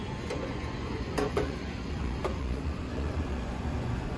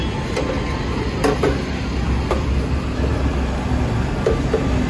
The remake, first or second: first